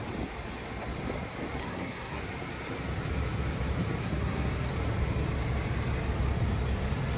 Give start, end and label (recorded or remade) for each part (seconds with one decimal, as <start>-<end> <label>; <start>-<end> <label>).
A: 0.0-1.6 recorded; 1.6-2.2 remade; 2.2-4.0 recorded; 4.0-4.7 remade; 4.7-7.2 recorded